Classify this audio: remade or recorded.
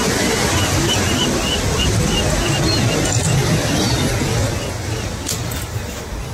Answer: recorded